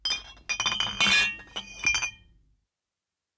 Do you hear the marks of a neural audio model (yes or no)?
no